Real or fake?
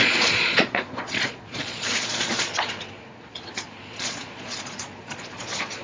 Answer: fake